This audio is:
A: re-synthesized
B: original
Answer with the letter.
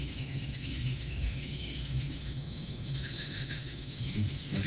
A